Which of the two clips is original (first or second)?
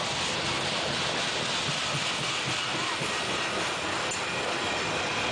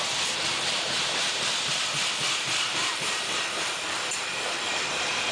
first